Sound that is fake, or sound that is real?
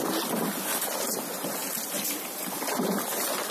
real